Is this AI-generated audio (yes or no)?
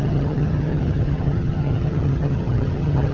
yes